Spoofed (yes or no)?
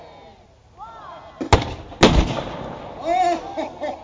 no